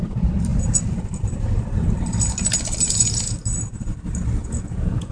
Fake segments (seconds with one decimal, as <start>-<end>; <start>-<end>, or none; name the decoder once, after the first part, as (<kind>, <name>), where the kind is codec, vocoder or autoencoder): 4.4-5.1 (vocoder, Vocos)